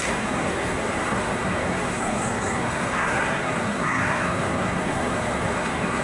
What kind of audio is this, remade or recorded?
remade